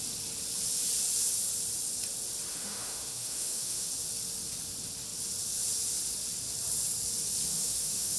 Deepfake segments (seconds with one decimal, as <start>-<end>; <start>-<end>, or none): 2.5-3.9; 7.5-8.2